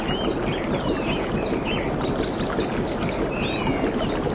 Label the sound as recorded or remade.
recorded